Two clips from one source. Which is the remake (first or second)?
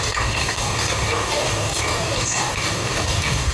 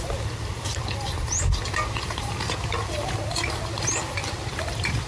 first